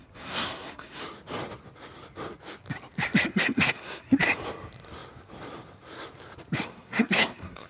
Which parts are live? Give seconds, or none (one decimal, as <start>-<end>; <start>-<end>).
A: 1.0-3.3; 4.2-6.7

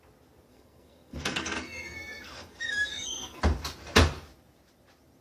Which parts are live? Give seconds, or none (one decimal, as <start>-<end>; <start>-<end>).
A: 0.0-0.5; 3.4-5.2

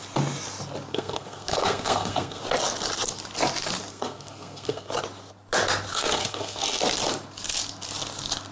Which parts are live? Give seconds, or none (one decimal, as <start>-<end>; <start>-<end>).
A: 0.0-0.9; 2.4-3.9; 4.9-5.9; 6.8-8.5